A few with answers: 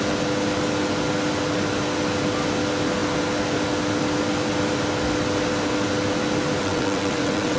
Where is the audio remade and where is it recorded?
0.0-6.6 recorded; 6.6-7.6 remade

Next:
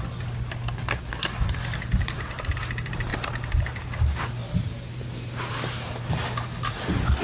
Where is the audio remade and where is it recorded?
0.0-3.1 recorded; 3.1-3.6 remade; 3.6-4.4 recorded; 4.4-5.9 remade; 5.9-7.2 recorded

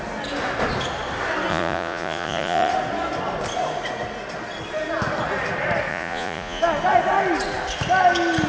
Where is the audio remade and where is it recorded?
0.0-1.5 recorded; 1.5-2.7 remade; 2.7-5.9 recorded; 5.9-6.6 remade; 6.6-8.5 recorded

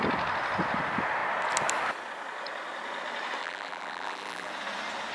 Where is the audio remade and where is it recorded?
0.0-3.4 recorded; 3.4-4.5 remade; 4.5-5.1 recorded

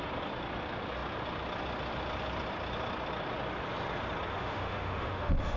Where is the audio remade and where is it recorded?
0.0-4.3 recorded; 4.3-5.6 remade

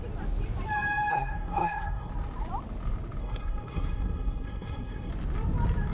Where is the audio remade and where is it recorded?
0.0-1.1 recorded; 1.1-2.1 remade; 2.1-3.2 recorded; 3.2-5.1 remade; 5.1-5.9 recorded